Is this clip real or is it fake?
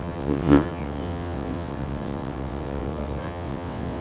fake